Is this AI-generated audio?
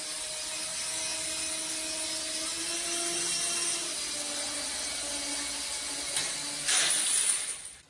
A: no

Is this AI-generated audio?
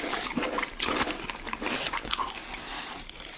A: yes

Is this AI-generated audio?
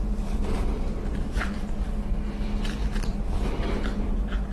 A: no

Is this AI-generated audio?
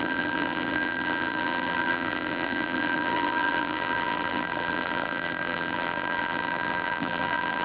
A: yes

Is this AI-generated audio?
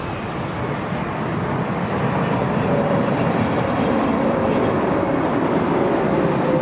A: yes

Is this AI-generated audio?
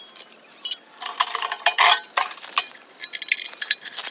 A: no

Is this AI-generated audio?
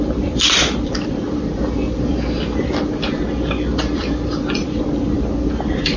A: yes